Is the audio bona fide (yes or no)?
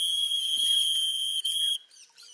no